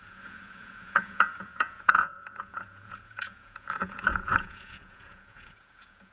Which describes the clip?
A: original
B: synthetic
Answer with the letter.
B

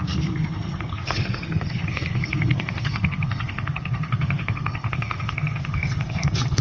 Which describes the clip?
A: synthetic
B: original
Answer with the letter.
A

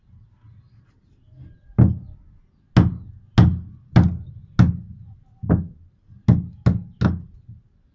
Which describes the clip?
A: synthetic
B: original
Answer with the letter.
B